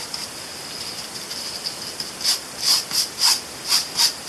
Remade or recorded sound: recorded